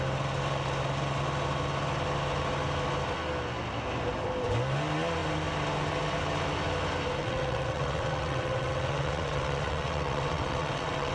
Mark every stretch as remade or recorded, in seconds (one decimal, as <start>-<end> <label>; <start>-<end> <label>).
0.0-7.2 recorded; 7.2-11.1 remade